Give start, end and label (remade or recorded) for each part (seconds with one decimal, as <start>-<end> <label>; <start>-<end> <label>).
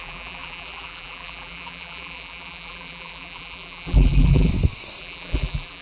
0.0-4.5 remade; 4.5-5.0 recorded; 5.0-5.8 remade